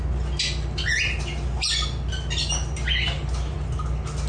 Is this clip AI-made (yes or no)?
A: no